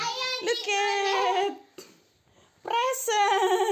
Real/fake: real